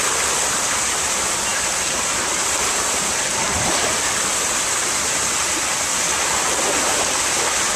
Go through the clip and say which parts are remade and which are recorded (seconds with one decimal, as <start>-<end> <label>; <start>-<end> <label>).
0.0-1.5 recorded; 1.5-3.7 remade; 3.7-7.8 recorded